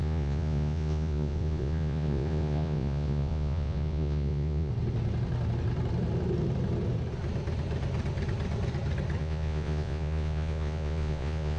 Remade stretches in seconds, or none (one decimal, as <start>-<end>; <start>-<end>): 0.0-4.7; 9.2-11.6